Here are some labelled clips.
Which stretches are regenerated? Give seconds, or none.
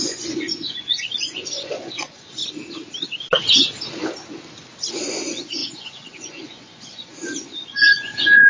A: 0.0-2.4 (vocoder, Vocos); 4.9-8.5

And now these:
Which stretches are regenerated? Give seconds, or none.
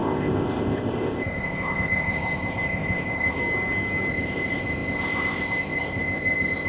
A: 0.0-3.4 (codec, ZipCodec); 4.1-6.7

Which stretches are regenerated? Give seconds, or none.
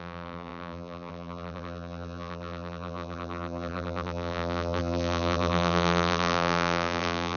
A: 0.0-7.4 (vocoder, BigVGAN v2)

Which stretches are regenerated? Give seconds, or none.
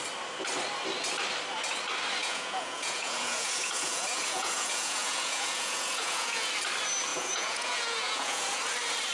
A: 2.2-6.5 (vocoder, Vocos); 7.1-8.6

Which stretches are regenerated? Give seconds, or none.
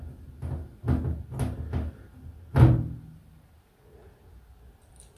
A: none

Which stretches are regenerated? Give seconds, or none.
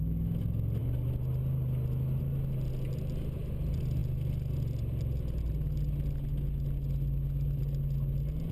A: none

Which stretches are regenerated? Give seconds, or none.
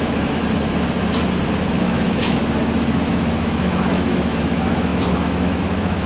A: 0.0-0.4 (autoencoder, DAC-VAE); 1.7-2.4; 3.1-6.1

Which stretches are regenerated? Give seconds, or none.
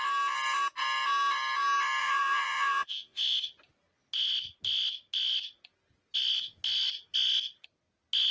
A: 2.0-3.2 (vocoder, Vocos)